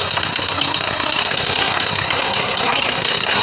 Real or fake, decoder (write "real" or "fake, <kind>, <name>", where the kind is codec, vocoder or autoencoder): fake, codec, SNAC